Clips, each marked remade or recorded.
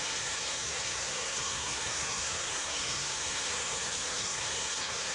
remade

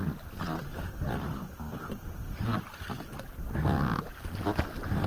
recorded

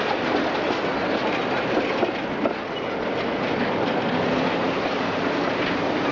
recorded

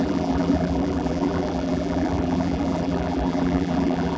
remade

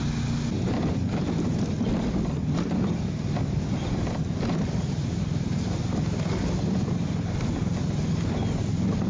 recorded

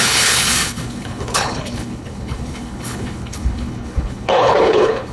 remade